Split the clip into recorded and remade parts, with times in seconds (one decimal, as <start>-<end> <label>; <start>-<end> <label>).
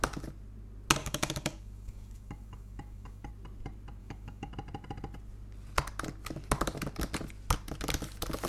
0.0-1.0 recorded; 1.0-3.3 remade; 3.3-4.0 recorded; 4.0-4.5 remade; 4.5-8.5 recorded